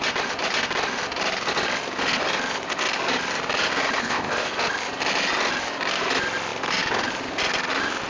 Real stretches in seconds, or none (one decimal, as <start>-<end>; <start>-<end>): 0.0-4.0; 4.5-8.1

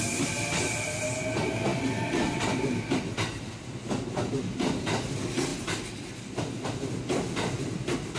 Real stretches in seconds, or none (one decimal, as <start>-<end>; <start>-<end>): 0.0-8.2

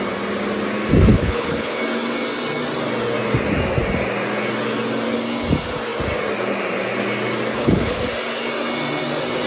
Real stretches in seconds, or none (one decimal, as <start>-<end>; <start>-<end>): 0.0-1.1; 1.8-7.5; 8.0-9.5

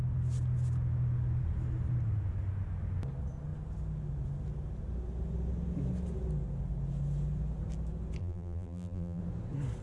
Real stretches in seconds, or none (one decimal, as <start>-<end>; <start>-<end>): 0.0-8.2; 9.2-9.8

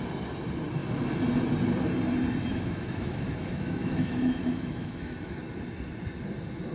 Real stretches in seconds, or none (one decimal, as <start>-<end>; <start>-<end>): 0.0-2.5; 5.4-6.7

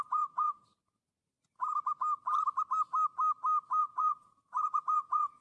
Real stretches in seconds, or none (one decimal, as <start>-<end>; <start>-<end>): 0.6-3.8

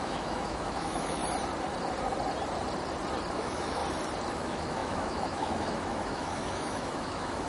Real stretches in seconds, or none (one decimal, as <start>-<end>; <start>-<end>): 1.2-3.3; 3.8-4.3

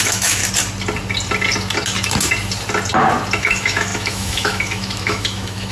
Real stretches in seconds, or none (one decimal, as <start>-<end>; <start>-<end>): 0.4-3.4